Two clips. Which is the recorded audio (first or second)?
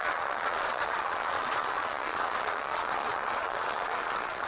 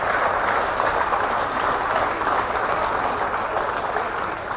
second